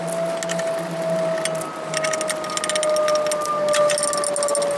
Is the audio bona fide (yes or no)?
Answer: yes